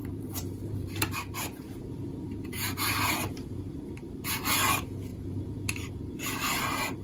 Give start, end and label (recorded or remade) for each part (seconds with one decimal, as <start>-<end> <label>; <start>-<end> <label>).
0.0-4.2 remade; 4.2-5.1 recorded; 5.1-5.9 remade; 5.9-7.0 recorded